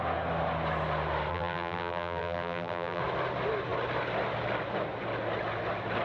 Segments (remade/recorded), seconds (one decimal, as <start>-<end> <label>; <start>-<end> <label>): 0.0-1.3 recorded; 1.3-3.0 remade; 3.0-6.0 recorded